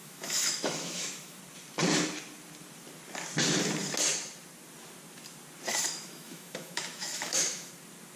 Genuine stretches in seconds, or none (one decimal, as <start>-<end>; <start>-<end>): 1.4-5.7; 7.7-8.2